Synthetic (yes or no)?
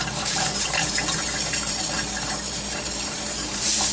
yes